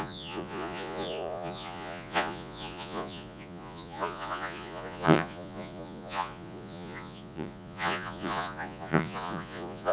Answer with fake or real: fake